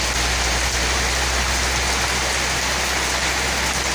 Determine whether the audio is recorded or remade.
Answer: recorded